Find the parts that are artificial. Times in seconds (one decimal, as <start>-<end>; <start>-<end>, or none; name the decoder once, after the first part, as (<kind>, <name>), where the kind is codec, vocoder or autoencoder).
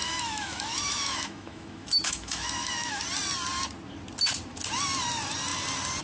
0.0-3.0 (autoencoder, DAC-VAE)